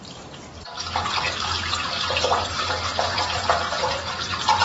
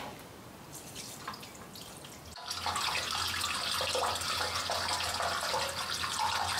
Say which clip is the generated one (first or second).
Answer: first